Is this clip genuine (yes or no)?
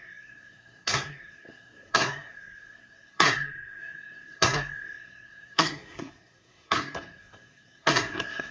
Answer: no